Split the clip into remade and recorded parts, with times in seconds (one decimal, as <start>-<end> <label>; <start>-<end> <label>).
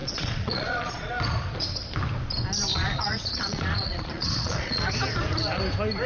0.0-1.1 remade; 1.1-2.7 recorded; 2.7-4.8 remade; 4.8-6.1 recorded